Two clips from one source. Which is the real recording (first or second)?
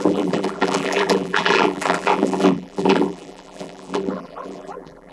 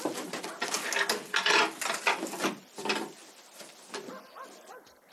second